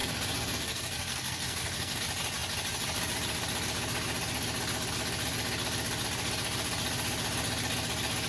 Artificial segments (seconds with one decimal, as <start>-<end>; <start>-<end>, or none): 0.0-2.0

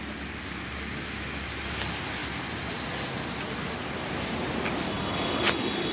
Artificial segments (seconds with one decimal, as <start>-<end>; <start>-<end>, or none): none

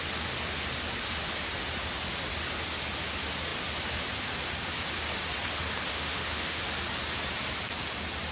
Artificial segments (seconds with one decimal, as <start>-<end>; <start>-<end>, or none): 5.9-6.6

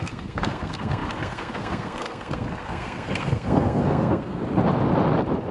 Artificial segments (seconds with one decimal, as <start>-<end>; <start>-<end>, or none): 0.0-4.4

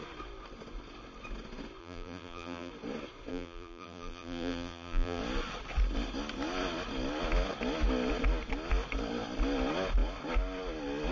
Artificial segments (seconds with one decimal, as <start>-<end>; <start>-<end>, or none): 1.8-2.7; 3.3-5.2

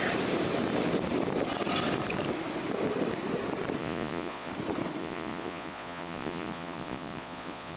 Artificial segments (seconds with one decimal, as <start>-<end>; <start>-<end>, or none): 3.8-4.5; 5.0-7.8

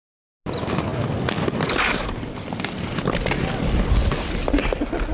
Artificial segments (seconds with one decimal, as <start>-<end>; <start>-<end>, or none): none